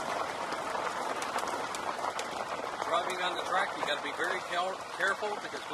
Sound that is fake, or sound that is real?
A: fake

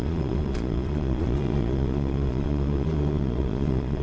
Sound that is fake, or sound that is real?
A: fake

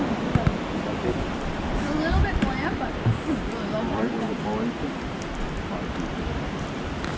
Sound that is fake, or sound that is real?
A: real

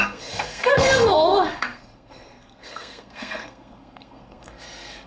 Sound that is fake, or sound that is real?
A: fake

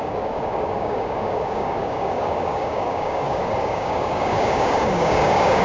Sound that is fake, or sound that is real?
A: fake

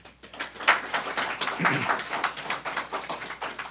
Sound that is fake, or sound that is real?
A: real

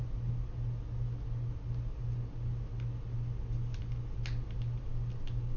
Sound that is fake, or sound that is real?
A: real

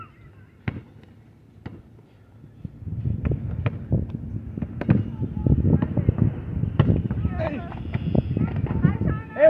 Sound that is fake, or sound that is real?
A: real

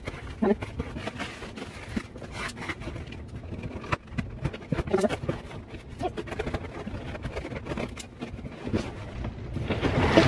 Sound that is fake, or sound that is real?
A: real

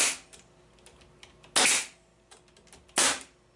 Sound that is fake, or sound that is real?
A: real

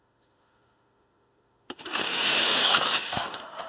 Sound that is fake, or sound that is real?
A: fake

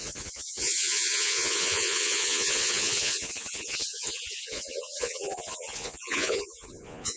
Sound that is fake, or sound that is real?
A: fake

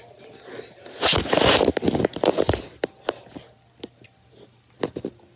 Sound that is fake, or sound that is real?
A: real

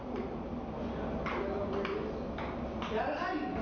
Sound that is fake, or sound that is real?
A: real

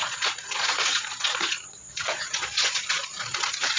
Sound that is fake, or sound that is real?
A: fake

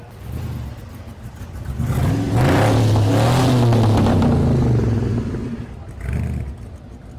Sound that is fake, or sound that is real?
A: real